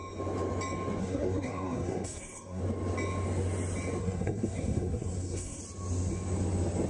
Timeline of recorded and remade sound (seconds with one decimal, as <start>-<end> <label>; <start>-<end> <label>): 0.0-1.0 recorded; 1.0-2.6 remade; 2.6-4.0 recorded; 4.0-5.6 remade; 5.6-6.9 recorded